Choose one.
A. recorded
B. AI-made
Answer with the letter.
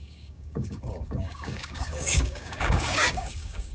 B